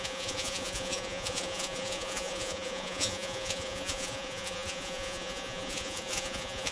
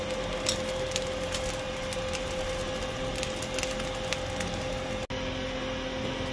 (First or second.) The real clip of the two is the second